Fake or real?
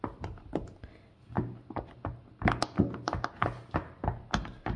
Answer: real